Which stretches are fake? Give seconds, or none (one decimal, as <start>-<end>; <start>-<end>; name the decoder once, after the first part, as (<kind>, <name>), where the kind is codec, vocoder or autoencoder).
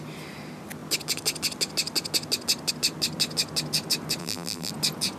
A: 4.2-4.7 (vocoder, BigVGAN v2)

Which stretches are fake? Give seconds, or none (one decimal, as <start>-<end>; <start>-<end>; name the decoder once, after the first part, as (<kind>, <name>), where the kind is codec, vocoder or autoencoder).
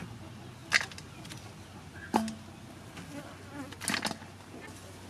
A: none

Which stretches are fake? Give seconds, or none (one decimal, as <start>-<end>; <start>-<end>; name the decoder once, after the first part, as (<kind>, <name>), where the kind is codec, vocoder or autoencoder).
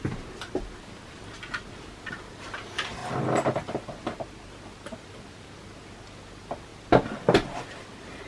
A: none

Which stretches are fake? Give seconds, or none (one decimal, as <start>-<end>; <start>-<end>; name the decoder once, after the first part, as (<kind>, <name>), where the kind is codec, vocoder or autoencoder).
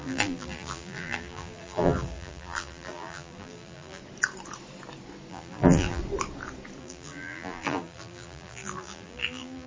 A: 0.0-4.0 (vocoder, BigVGAN v2); 5.3-6.0; 6.8-9.7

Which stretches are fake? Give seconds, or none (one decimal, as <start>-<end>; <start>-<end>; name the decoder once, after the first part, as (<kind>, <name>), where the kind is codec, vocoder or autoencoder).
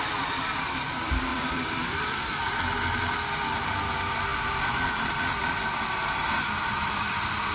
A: 1.3-2.2 (vocoder, BigVGAN v2); 4.3-7.5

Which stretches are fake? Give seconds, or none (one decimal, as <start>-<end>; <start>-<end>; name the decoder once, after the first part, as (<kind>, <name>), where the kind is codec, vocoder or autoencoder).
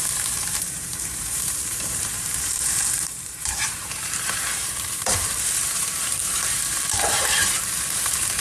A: 0.0-8.4 (vocoder, BigVGAN v2)